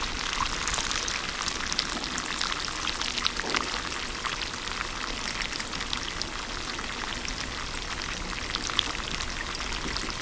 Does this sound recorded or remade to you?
recorded